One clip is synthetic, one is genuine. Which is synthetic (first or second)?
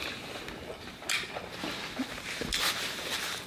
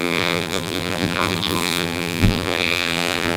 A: second